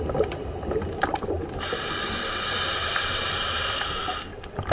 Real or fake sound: real